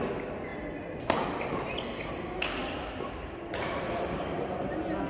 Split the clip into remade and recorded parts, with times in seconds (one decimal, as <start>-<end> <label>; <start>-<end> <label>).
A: 0.0-0.5 recorded; 0.5-1.9 remade; 1.9-5.1 recorded